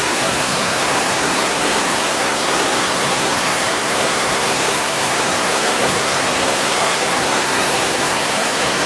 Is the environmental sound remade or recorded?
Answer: remade